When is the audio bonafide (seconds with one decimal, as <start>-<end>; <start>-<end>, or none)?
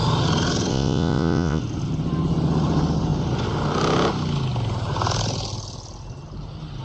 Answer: 0.0-0.7; 1.6-6.8